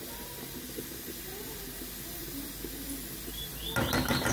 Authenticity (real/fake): real